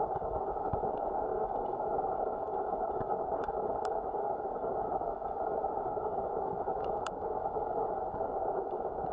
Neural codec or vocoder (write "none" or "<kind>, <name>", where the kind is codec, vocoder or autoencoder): codec, DAC